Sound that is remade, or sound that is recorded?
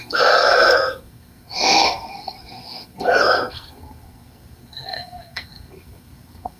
remade